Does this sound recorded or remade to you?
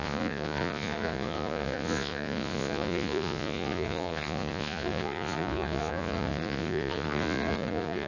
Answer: remade